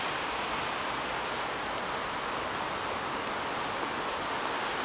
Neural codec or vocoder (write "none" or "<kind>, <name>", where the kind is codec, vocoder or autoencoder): none